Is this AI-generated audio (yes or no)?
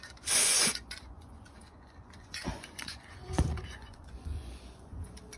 yes